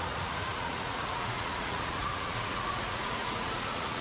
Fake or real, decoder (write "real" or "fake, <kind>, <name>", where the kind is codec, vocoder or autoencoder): fake, vocoder, Vocos